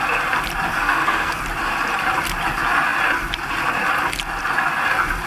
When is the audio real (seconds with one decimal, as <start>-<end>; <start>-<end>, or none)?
0.0-0.7; 1.4-5.3